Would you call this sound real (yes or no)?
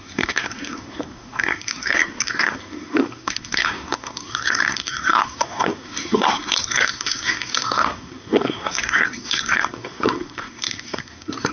no